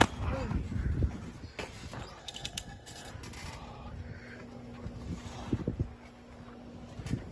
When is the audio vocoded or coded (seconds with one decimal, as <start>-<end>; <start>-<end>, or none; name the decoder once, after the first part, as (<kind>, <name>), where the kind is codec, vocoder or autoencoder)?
2.2-3.1 (codec, SNAC)